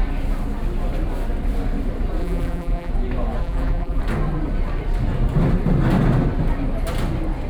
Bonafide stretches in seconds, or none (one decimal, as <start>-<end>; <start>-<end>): 0.0-2.2; 2.9-3.4; 4.0-7.5